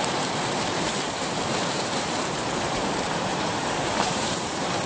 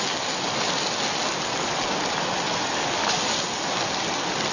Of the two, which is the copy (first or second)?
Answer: first